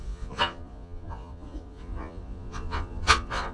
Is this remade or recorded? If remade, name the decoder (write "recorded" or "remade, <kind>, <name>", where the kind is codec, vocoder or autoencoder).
remade, vocoder, Vocos